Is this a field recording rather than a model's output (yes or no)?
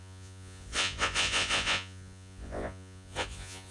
no